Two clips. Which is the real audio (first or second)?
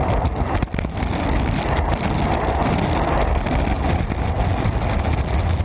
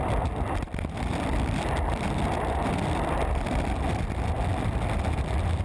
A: first